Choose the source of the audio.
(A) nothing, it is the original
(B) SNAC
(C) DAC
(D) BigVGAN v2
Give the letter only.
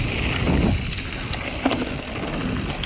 A